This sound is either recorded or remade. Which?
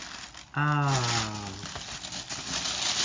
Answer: recorded